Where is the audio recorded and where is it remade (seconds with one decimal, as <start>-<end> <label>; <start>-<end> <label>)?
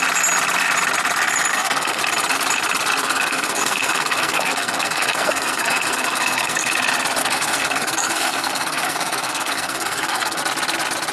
0.0-1.5 recorded; 1.5-2.0 remade; 2.0-3.0 recorded; 3.0-6.7 remade; 6.7-7.2 recorded; 7.2-10.4 remade; 10.4-11.1 recorded